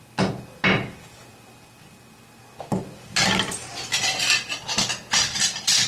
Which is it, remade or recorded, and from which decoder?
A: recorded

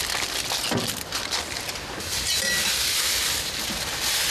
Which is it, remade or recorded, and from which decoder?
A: recorded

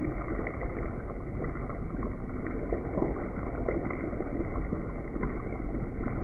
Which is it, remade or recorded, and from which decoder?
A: recorded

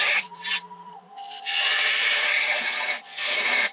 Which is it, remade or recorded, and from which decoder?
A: remade, vocoder, BigVGAN v2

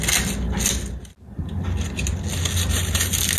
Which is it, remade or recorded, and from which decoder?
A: recorded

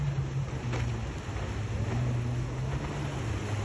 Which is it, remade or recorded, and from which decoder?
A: recorded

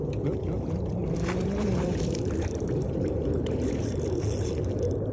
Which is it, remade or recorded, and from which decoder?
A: remade, vocoder, BigVGAN v2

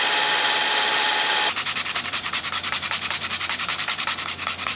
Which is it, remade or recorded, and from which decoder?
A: remade, vocoder, BigVGAN v2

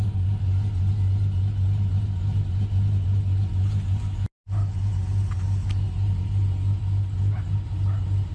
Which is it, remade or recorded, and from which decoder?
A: recorded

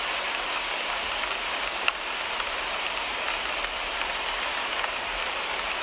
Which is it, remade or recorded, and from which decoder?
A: remade, vocoder, BigVGAN v2